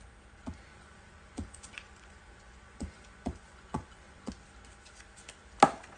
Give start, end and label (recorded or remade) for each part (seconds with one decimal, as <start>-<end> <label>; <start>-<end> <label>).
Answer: 0.0-0.7 recorded; 0.7-4.3 remade; 4.3-6.0 recorded